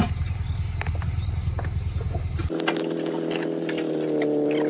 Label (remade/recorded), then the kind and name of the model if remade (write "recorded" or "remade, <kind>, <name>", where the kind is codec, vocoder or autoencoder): recorded